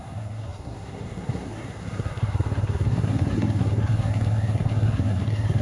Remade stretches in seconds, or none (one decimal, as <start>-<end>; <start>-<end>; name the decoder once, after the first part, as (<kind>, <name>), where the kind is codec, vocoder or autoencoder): 0.0-5.6 (codec, SNAC)